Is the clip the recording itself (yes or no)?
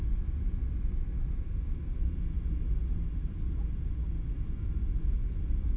yes